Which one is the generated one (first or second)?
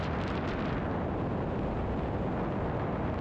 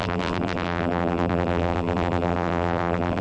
second